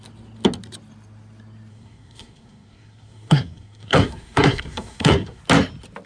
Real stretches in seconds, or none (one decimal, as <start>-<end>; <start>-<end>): 0.0-1.7; 5.4-6.1